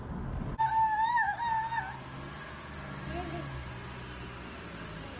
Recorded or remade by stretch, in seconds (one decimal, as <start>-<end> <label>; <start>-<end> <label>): 0.0-5.2 recorded